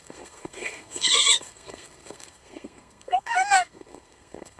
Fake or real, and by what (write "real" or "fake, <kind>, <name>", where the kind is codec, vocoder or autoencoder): fake, codec, SNAC